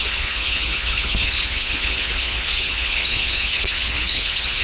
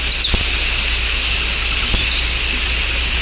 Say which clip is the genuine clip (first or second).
second